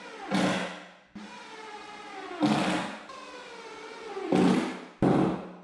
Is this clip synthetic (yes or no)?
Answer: no